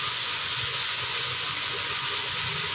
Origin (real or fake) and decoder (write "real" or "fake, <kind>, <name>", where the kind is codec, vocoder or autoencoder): fake, vocoder, Vocos